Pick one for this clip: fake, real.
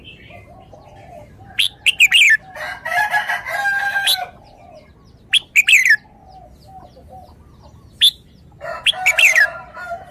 real